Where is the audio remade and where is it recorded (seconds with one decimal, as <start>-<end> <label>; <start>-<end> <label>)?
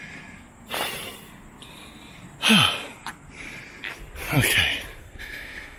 0.0-5.0 recorded; 5.0-5.8 remade